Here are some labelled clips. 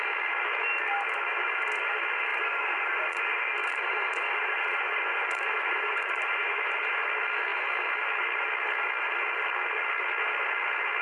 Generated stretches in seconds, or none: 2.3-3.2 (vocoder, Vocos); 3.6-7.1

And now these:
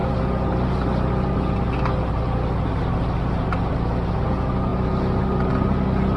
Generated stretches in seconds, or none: none

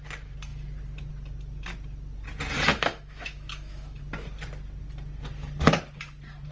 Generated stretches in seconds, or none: 2.7-4.0 (autoencoder, DAC-VAE)

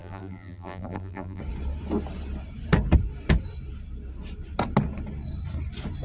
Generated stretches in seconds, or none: 0.0-1.4 (vocoder, BigVGAN v2)

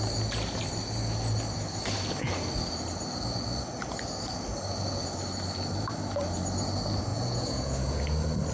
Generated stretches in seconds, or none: 7.1-8.0 (vocoder, Vocos)